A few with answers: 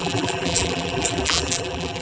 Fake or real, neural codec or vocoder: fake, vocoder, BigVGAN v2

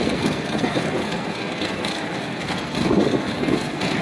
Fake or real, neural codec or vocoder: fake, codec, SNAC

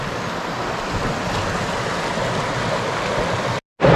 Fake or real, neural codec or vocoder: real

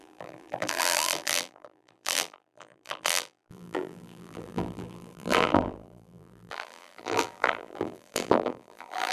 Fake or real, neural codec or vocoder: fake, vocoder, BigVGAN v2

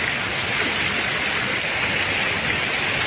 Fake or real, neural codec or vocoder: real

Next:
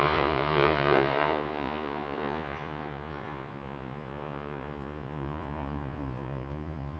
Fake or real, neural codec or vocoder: fake, vocoder, Vocos